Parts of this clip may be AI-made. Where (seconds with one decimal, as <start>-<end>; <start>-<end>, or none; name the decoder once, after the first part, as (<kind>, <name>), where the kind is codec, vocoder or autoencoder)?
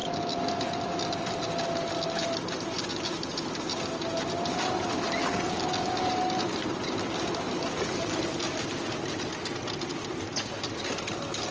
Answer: none